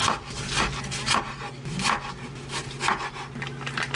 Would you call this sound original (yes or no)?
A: yes